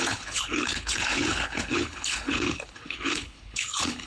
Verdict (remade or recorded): remade